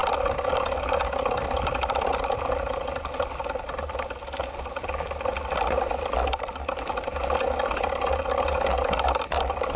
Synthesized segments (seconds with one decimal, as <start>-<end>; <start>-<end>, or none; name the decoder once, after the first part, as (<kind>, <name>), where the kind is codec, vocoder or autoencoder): none